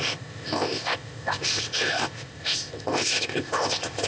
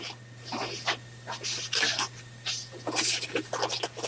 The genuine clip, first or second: second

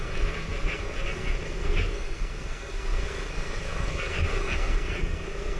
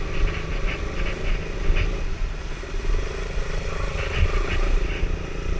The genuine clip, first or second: second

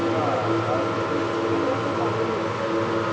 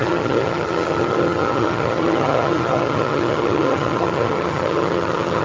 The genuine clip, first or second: first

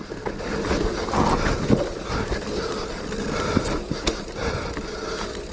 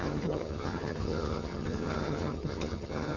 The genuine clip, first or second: first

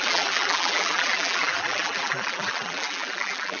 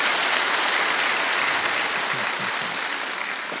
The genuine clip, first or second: second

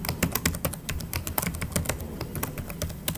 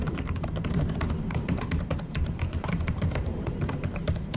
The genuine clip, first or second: first